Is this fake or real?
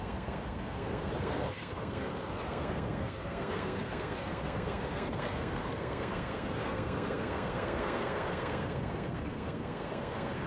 fake